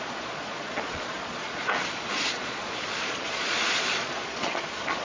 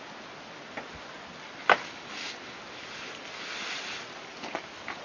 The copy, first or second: first